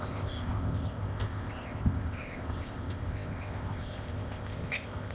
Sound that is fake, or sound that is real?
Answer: fake